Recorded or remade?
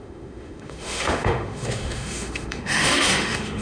remade